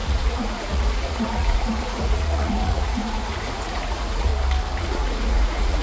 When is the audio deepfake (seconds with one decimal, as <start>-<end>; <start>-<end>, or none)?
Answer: 0.0-4.3; 4.8-5.8